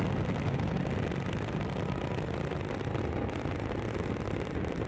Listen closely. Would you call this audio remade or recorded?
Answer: recorded